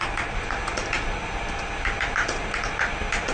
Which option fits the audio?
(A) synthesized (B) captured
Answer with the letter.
B